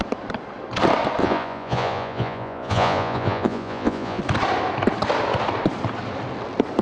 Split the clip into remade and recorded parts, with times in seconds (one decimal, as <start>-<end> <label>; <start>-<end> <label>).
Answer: 0.0-1.2 recorded; 1.2-4.2 remade; 4.2-6.8 recorded